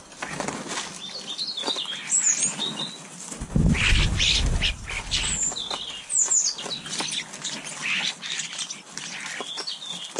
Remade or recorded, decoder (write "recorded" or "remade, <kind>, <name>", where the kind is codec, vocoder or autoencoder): recorded